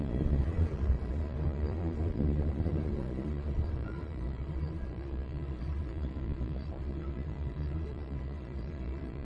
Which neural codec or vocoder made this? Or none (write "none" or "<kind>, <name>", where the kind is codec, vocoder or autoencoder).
vocoder, Vocos